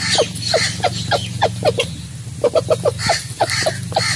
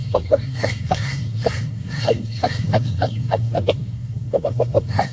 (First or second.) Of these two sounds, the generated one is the second